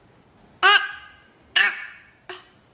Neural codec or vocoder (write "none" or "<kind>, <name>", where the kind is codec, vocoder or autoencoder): none